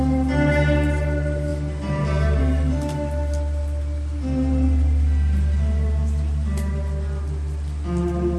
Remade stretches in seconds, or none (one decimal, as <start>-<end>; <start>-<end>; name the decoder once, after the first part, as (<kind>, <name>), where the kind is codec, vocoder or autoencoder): none